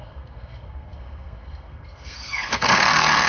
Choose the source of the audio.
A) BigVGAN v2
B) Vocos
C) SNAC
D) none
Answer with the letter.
C